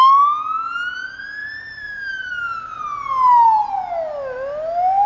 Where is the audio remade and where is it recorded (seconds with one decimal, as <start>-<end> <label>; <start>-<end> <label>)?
0.0-1.4 recorded; 1.4-2.3 remade; 2.3-5.1 recorded

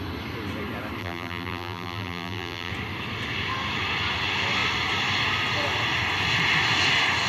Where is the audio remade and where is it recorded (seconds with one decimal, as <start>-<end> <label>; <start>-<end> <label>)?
0.0-1.0 recorded; 1.0-2.7 remade; 2.7-7.3 recorded

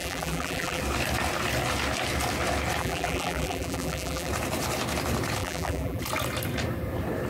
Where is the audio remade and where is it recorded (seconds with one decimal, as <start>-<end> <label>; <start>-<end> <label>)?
0.0-0.8 remade; 0.8-2.8 recorded; 2.8-4.3 remade; 4.3-5.4 recorded; 5.4-6.0 remade; 6.0-7.3 recorded

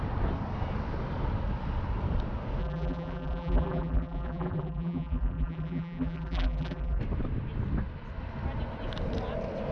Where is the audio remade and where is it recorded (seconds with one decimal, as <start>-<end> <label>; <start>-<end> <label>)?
0.0-2.6 recorded; 2.6-7.0 remade; 7.0-9.7 recorded

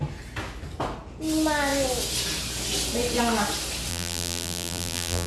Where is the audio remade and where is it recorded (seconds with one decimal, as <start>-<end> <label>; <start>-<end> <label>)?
0.0-3.9 recorded; 3.9-5.3 remade

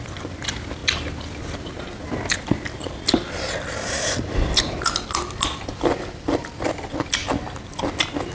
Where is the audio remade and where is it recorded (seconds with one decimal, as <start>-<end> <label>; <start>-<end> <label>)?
0.0-8.3 recorded

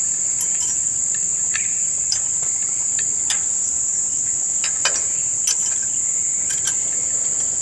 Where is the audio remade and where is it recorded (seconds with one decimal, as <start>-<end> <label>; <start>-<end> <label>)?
0.0-7.6 recorded

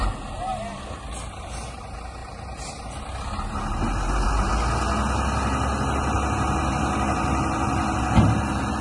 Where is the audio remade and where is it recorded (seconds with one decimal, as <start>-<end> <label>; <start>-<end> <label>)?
0.0-0.5 remade; 0.5-1.1 recorded; 1.1-4.5 remade; 4.5-6.7 recorded; 6.7-8.8 remade